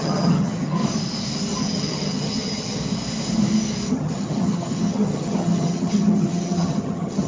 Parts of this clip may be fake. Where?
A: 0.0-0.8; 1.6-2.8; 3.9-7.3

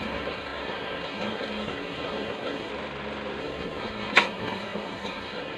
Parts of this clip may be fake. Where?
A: 0.0-2.7; 3.4-5.6

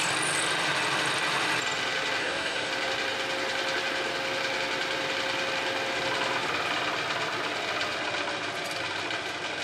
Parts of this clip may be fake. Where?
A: 2.2-2.7

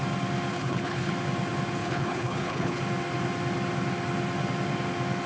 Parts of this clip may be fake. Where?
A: 0.5-1.1; 1.8-2.8

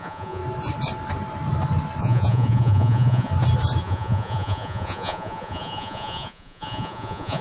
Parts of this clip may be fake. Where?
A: 0.0-0.4; 2.0-3.3; 3.8-7.4

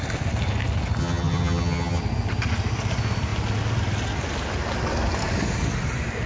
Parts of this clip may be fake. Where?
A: 1.0-2.0

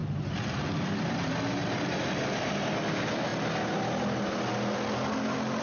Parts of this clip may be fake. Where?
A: none